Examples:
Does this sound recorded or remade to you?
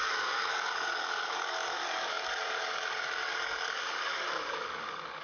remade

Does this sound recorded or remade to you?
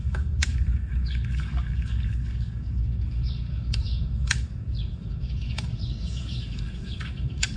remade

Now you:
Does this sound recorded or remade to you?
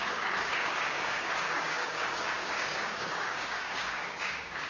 remade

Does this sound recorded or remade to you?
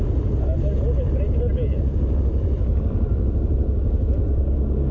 recorded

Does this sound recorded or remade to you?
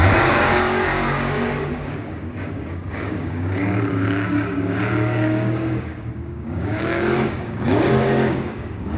remade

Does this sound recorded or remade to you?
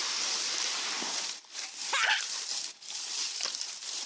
recorded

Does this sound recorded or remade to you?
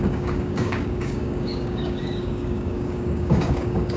remade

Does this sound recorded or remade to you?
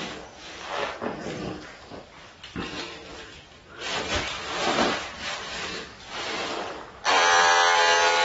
recorded